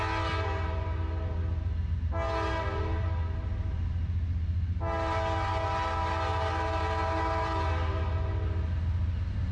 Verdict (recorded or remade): recorded